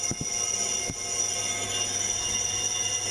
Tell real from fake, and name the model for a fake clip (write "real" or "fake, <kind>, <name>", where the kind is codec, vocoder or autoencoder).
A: real